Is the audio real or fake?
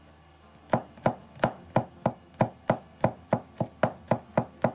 real